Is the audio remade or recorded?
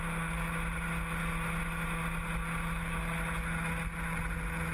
recorded